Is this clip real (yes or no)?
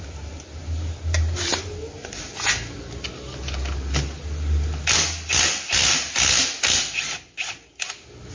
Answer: yes